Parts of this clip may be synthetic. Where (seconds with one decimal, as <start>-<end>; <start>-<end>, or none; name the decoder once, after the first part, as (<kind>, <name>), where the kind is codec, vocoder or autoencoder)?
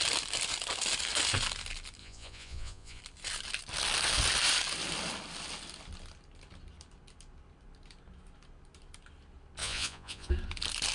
2.0-3.0 (vocoder, Vocos); 9.6-10.3